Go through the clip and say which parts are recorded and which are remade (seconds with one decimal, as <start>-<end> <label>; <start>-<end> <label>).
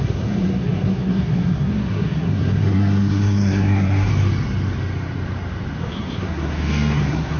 0.0-4.1 remade; 4.1-5.8 recorded; 5.8-7.4 remade